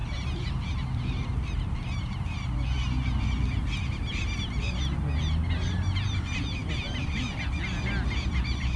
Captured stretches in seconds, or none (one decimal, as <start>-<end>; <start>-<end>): 2.4-8.8